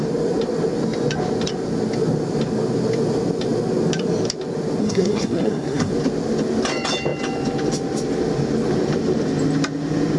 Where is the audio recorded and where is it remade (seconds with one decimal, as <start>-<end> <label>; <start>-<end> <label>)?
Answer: 0.0-4.8 recorded; 4.8-5.9 remade; 5.9-10.2 recorded